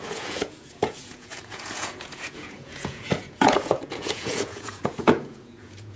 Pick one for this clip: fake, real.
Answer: fake